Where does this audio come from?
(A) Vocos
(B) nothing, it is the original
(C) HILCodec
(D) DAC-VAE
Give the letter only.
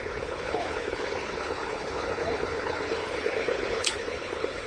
C